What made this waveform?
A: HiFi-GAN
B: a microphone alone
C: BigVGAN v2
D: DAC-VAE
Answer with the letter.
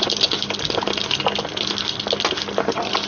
B